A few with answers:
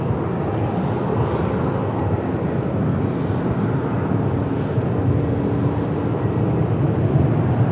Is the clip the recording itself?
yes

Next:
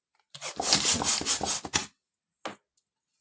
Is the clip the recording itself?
yes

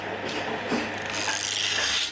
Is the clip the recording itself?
yes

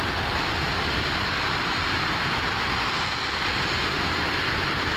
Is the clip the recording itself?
yes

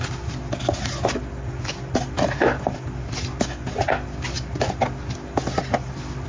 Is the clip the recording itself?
yes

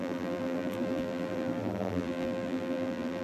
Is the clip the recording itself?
no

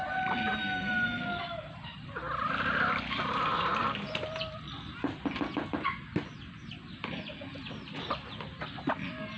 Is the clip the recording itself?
yes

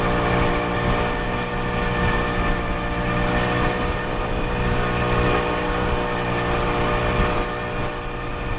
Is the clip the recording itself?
yes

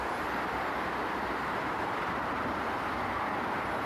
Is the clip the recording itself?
yes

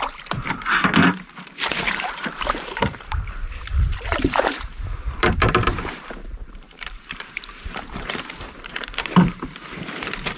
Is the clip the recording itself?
no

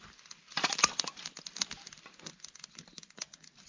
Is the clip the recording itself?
yes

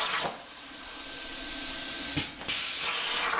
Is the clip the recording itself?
yes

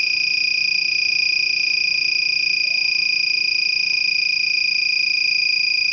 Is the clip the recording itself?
yes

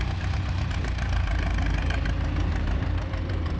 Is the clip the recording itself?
no